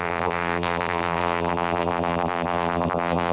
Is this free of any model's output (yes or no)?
no